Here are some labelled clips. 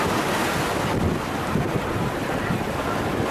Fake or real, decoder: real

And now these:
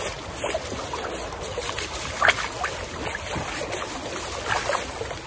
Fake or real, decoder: real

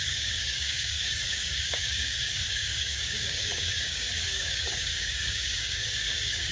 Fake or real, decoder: fake, codec, DAC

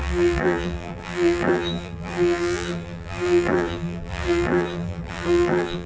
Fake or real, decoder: fake, vocoder, BigVGAN v2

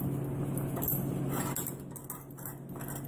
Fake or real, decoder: real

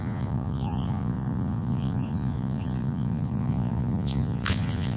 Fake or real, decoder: fake, vocoder, Vocos